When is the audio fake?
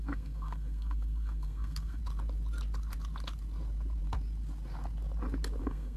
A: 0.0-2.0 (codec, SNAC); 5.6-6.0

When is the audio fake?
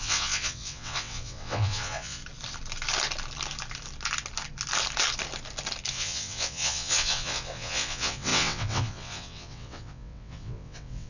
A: 0.0-2.2 (vocoder, WaveNeXt); 5.9-11.1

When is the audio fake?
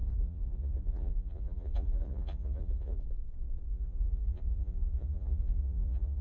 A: 0.0-3.0 (vocoder, Vocos); 3.7-6.2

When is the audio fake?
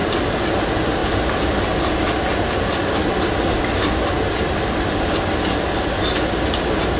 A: none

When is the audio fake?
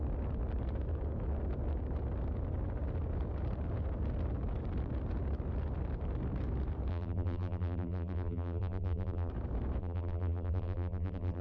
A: 6.9-9.3 (vocoder, BigVGAN v2); 9.8-11.4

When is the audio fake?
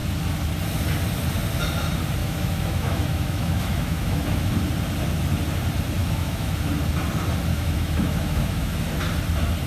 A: 2.2-4.5 (autoencoder, DAC-VAE); 6.0-6.5; 7.5-8.8